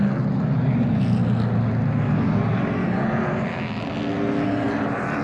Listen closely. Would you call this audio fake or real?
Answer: real